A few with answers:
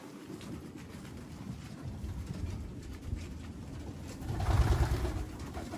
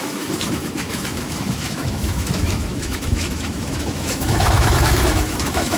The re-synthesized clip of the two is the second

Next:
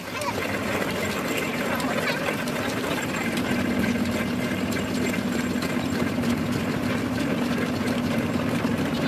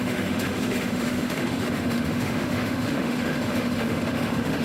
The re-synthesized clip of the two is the second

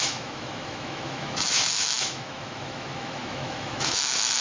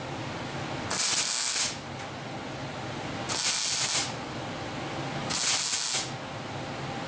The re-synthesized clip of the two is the first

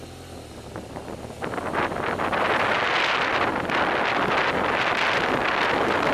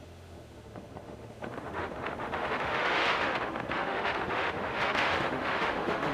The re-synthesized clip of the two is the second